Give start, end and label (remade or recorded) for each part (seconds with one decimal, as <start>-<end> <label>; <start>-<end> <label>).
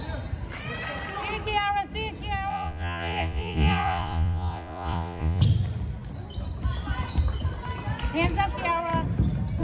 0.0-2.5 recorded; 2.5-5.4 remade; 5.4-9.6 recorded